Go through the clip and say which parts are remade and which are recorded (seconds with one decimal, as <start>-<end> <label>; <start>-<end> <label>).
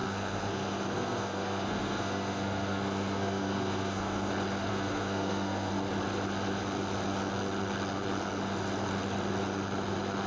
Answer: 0.0-4.3 remade; 4.3-4.7 recorded; 4.7-5.7 remade; 5.7-10.3 recorded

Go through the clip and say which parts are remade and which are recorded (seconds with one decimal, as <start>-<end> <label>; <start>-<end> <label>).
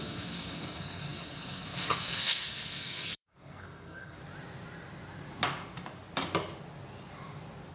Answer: 0.0-4.2 remade; 4.2-7.7 recorded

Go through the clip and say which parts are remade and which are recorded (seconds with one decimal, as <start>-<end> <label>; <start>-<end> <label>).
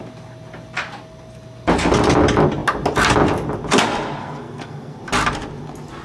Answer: 0.0-4.2 recorded; 4.2-5.0 remade; 5.0-6.0 recorded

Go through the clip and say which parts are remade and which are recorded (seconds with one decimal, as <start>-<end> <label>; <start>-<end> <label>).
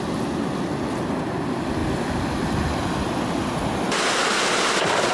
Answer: 0.0-5.1 recorded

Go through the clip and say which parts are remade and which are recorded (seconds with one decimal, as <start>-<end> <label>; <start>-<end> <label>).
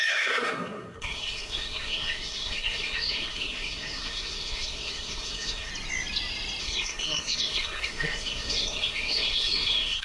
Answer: 0.0-5.7 remade; 5.7-6.6 recorded; 6.6-10.0 remade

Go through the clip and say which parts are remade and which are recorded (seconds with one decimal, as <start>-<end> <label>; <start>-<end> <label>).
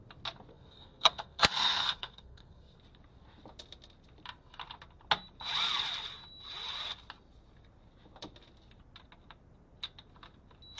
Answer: 0.0-0.5 recorded; 0.5-2.8 remade; 2.8-10.8 recorded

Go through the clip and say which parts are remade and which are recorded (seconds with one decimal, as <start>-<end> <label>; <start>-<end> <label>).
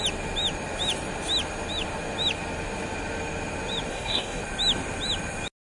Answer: 0.0-3.9 recorded; 3.9-4.4 remade; 4.4-5.7 recorded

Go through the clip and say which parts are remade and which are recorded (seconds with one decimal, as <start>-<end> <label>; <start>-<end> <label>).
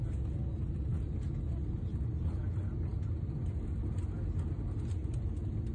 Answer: 0.0-5.7 recorded